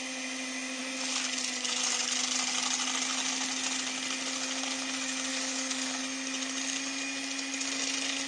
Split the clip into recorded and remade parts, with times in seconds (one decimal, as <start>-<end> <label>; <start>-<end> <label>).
0.0-5.3 recorded; 5.3-6.0 remade; 6.0-8.3 recorded